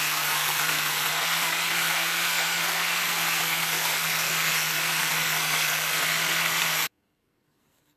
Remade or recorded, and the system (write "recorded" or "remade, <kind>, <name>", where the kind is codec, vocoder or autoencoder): remade, codec, SNAC